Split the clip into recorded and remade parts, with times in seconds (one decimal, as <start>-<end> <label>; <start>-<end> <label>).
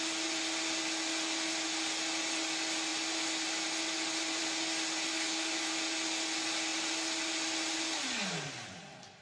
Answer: 0.0-5.1 recorded; 5.1-5.7 remade; 5.7-9.2 recorded